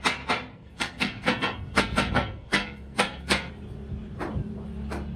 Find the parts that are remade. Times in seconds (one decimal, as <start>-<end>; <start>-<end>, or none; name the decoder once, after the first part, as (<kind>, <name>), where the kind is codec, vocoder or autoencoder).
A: 0.5-3.5 (codec, SNAC)